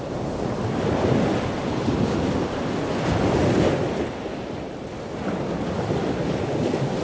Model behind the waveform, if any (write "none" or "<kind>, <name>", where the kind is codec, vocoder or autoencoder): none